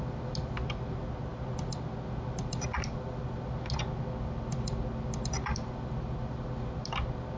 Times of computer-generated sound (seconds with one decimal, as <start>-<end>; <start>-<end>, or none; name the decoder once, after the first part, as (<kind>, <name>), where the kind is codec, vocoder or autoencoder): none